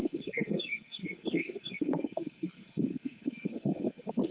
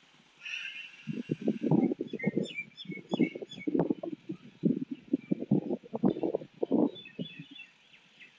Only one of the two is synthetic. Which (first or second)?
first